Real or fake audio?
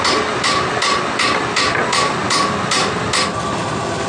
real